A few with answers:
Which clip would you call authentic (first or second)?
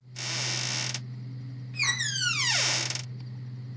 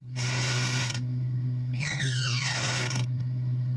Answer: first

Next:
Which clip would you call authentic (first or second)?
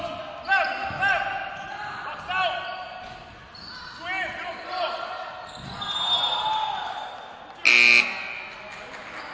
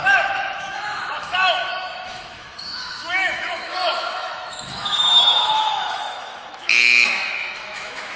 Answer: first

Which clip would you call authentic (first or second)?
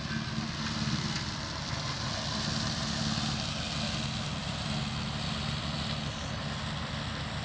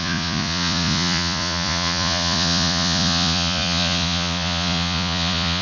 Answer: first